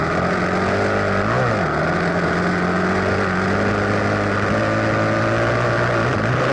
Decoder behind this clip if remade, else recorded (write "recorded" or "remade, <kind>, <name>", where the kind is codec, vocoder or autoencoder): recorded